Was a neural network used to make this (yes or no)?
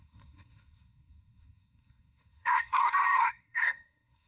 yes